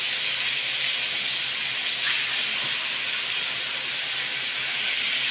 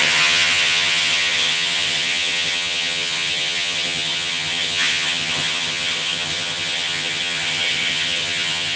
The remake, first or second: second